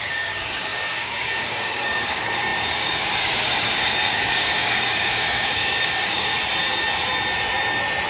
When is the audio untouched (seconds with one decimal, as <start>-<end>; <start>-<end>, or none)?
6.3-8.1